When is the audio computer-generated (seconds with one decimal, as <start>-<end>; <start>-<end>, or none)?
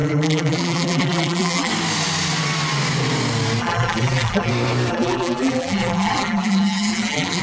0.0-1.7; 3.6-4.5; 4.9-7.4